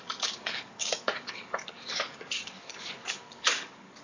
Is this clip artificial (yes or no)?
yes